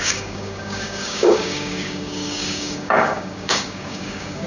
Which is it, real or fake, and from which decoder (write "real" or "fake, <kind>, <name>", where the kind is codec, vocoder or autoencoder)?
fake, codec, DAC